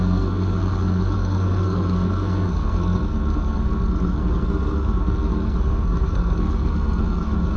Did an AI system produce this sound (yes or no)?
yes